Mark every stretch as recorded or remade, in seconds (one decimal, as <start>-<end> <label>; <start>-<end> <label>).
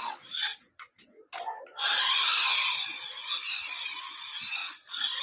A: 0.0-0.5 recorded; 0.5-1.4 remade; 1.4-5.2 recorded